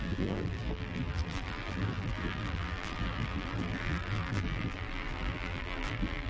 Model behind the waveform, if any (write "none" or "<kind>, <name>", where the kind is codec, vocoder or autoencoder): vocoder, BigVGAN v2